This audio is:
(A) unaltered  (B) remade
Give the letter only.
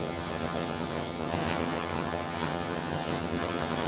B